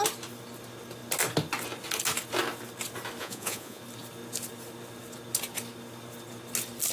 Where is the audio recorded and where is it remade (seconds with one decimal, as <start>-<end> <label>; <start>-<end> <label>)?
0.0-3.2 recorded; 3.2-3.8 remade; 3.8-6.9 recorded